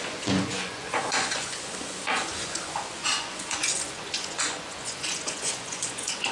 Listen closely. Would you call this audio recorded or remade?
remade